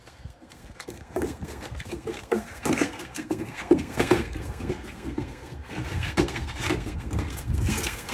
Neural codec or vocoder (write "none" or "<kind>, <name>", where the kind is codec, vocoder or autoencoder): codec, SNAC